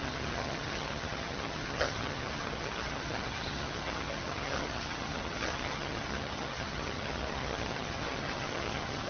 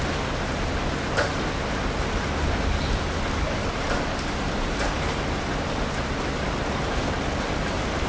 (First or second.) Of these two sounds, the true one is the second